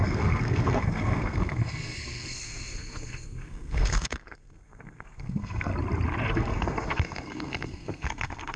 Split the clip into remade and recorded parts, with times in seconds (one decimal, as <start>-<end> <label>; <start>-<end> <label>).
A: 0.0-5.7 remade; 5.7-6.3 recorded; 6.3-8.6 remade